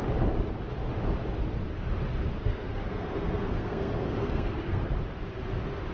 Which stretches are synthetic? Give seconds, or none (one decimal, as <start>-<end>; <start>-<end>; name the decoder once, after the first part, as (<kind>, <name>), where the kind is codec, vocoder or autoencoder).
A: 2.4-4.9 (codec, SNAC)